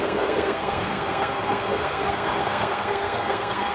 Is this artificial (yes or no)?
yes